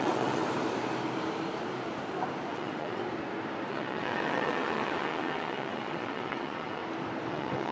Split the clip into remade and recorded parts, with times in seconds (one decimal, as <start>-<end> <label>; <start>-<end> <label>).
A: 0.0-0.4 remade; 0.4-2.5 recorded; 2.5-3.0 remade; 3.0-3.7 recorded; 3.7-6.8 remade; 6.8-7.3 recorded; 7.3-7.7 remade

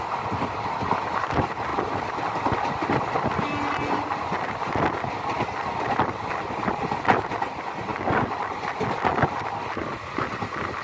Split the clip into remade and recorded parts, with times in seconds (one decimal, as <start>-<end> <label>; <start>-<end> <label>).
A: 0.0-10.8 recorded